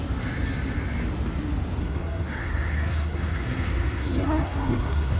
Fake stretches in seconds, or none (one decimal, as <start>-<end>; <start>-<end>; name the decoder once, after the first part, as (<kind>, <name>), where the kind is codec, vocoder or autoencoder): 1.8-5.2 (codec, SNAC)

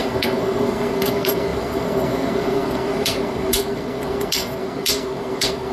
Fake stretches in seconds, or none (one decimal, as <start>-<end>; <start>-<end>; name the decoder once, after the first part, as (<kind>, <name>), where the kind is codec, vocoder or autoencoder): 0.0-5.7 (codec, SNAC)

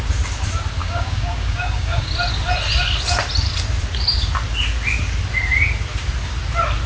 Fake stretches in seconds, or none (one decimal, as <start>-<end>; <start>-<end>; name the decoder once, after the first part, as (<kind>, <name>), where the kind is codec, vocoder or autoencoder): 0.8-2.1 (codec, DAC)

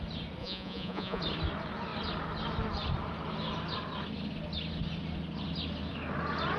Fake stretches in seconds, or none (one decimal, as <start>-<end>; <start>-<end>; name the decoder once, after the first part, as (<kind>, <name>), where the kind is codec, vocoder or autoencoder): 0.4-1.2 (vocoder, Vocos)

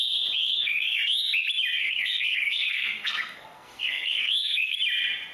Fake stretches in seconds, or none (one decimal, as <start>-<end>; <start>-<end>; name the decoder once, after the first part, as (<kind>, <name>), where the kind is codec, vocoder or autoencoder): 0.4-1.0 (codec, SNAC); 1.8-4.8

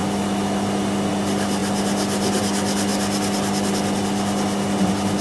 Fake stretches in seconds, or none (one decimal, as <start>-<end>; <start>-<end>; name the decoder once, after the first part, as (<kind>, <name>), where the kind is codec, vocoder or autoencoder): none

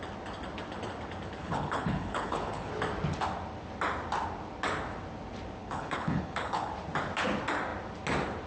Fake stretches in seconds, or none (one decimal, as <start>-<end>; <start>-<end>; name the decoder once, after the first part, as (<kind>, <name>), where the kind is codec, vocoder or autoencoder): 1.4-2.7 (codec, HILCodec); 5.6-6.7

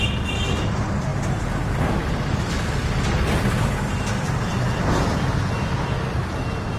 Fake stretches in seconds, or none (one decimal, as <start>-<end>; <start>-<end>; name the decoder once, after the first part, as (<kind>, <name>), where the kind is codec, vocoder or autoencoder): none